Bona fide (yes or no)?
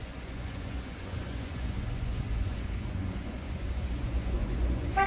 no